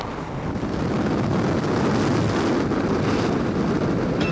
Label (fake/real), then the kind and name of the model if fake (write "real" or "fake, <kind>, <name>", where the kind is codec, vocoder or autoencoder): real